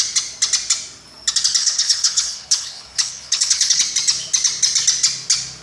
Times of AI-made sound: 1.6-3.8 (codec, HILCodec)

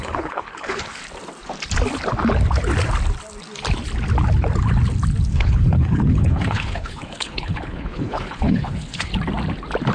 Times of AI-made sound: 0.0-1.0 (codec, HILCodec); 5.3-9.1

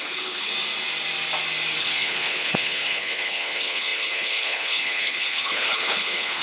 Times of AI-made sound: 0.0-0.5 (codec, HILCodec); 1.8-6.4

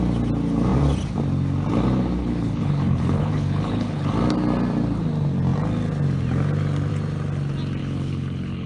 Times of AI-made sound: 2.2-4.1 (codec, HILCodec); 7.8-8.7

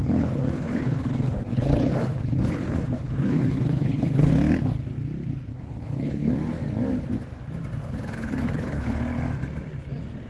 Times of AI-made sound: 0.0-4.3 (codec, HILCodec); 5.5-6.3; 7.8-9.0

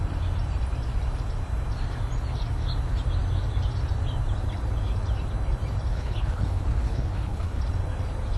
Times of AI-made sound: 5.9-7.6 (codec, HILCodec)

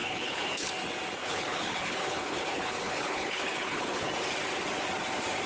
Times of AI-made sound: 0.0-0.7 (codec, HILCodec); 1.2-4.1

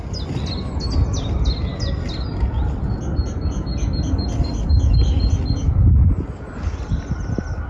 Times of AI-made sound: none